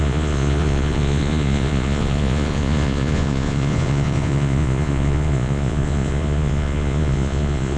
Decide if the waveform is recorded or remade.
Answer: remade